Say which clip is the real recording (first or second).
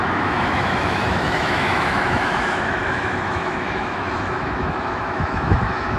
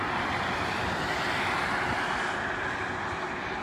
second